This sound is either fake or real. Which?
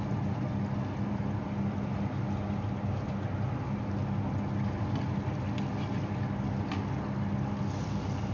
real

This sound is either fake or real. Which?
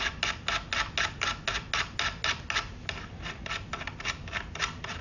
real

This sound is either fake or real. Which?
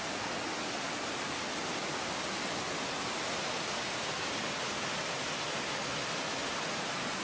real